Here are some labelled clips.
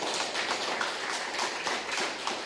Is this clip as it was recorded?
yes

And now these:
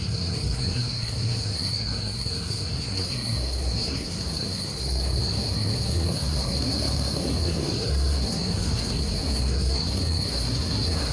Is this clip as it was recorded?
no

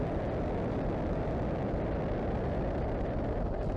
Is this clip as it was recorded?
yes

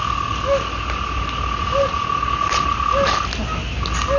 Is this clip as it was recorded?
yes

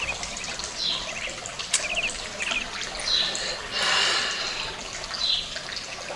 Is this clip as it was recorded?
yes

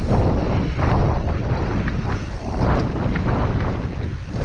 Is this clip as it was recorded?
yes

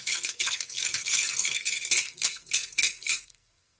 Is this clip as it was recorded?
no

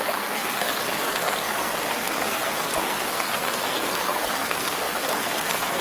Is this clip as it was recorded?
no